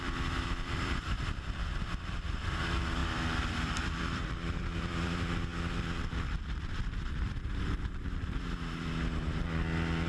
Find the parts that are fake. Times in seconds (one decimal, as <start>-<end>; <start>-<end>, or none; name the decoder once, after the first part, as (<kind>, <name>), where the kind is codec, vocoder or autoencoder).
0.0-5.5 (vocoder, BigVGAN v2); 6.1-10.1